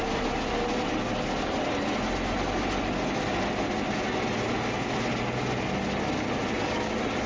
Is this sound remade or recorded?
recorded